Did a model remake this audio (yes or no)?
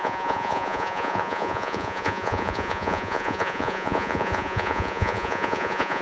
yes